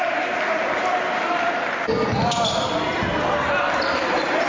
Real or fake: fake